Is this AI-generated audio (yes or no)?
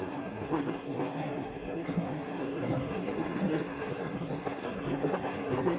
yes